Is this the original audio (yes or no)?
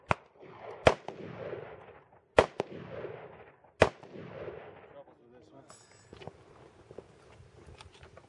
yes